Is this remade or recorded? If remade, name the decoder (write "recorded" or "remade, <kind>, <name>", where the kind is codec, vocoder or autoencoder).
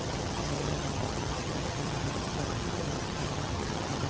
remade, vocoder, HiFi-GAN